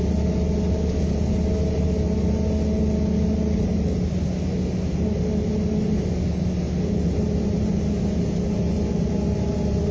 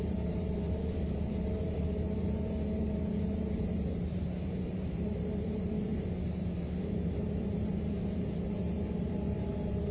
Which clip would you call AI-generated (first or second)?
second